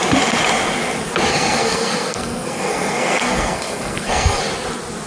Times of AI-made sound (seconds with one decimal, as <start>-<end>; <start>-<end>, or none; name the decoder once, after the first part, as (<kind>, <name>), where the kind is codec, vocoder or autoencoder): 1.3-4.4 (codec, SNAC)